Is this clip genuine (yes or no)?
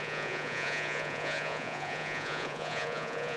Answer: no